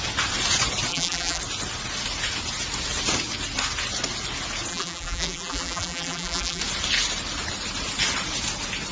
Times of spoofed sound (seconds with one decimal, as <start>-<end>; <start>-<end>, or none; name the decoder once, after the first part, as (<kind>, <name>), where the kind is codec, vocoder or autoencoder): 0.9-1.4 (vocoder, BigVGAN v2); 4.7-6.6